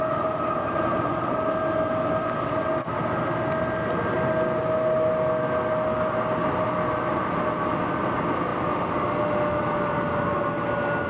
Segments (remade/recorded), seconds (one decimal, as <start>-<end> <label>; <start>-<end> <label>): 0.0-11.1 recorded